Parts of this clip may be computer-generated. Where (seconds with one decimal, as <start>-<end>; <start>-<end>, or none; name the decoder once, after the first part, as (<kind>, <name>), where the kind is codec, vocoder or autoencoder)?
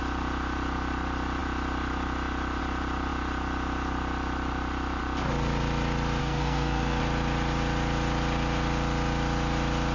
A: 6.2-7.0 (codec, SNAC)